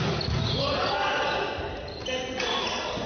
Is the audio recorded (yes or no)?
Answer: yes